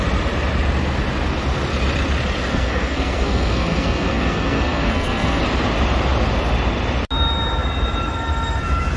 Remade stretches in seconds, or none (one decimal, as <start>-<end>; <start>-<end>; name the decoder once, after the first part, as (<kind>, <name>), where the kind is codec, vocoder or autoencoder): 2.5-5.4 (codec, SNAC)